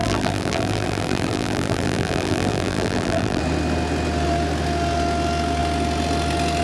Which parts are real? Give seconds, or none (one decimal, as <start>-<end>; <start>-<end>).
3.4-6.6